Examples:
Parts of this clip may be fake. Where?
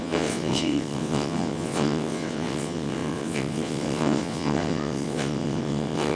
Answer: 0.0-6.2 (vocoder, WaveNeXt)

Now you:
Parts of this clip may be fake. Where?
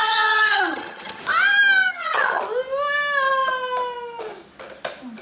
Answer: 0.0-1.2 (vocoder, HiFi-GAN); 1.9-2.4